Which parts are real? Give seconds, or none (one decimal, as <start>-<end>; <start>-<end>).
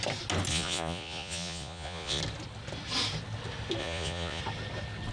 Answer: 0.0-0.5; 2.2-3.8; 4.4-5.1